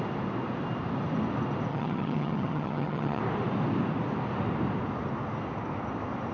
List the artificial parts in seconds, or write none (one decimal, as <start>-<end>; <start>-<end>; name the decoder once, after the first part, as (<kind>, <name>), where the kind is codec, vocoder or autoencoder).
1.7-3.2 (vocoder, HiFi-GAN)